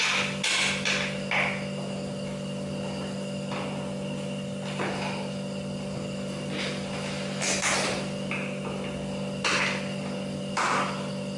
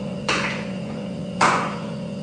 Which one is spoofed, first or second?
second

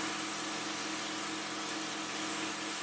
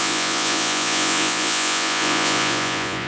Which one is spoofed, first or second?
second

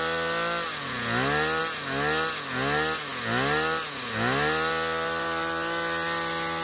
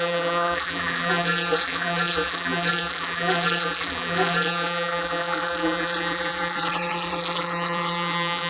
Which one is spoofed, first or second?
second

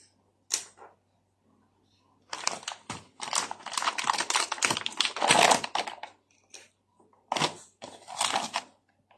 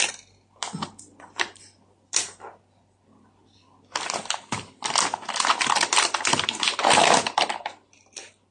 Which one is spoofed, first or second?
second